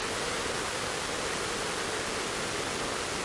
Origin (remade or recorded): recorded